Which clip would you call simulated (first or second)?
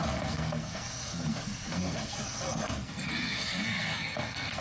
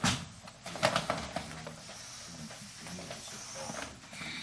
first